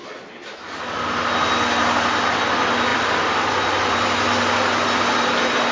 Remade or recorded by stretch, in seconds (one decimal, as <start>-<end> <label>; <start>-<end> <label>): 0.0-5.7 recorded